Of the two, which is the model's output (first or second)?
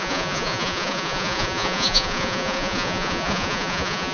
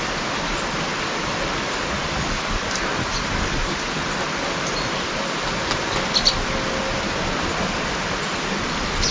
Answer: first